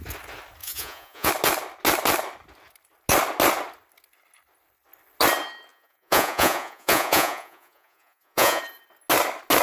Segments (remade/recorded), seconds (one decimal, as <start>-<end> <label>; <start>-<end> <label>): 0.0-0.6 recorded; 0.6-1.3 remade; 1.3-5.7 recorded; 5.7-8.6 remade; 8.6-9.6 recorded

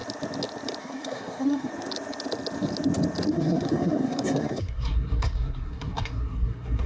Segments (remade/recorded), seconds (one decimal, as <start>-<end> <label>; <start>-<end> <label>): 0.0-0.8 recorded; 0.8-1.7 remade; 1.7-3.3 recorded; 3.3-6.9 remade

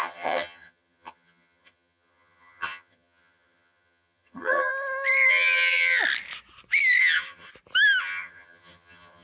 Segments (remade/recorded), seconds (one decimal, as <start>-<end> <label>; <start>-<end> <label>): 0.0-4.7 remade; 4.7-5.3 recorded; 5.3-6.0 remade; 6.0-7.0 recorded; 7.0-7.5 remade; 7.5-8.0 recorded; 8.0-9.2 remade

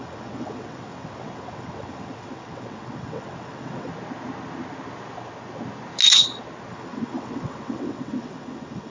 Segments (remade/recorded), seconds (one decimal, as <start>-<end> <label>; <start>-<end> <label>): 0.0-3.9 remade; 3.9-6.7 recorded; 6.7-8.9 remade

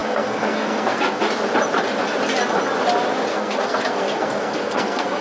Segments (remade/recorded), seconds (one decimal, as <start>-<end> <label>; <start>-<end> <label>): 0.0-1.2 remade; 1.2-3.3 recorded; 3.3-5.2 remade